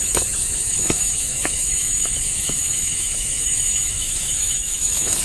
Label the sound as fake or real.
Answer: fake